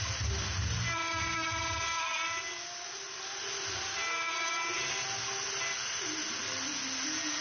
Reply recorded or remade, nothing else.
recorded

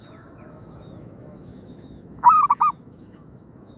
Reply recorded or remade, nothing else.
remade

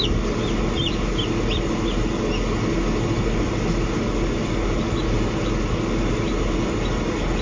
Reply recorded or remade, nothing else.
recorded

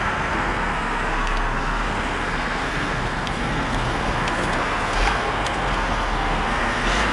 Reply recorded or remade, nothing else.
remade